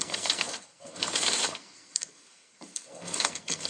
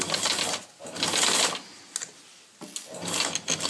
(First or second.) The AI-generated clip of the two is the first